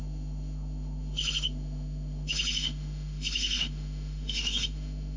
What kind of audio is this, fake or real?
fake